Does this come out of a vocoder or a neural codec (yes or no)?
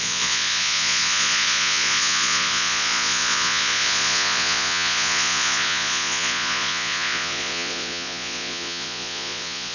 yes